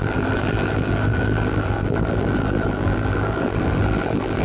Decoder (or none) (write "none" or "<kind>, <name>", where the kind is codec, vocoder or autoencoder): vocoder, BigVGAN v2